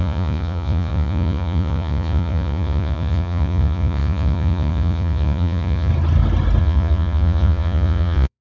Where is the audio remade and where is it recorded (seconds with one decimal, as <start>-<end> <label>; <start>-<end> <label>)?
0.0-5.9 remade; 5.9-6.6 recorded; 6.6-8.4 remade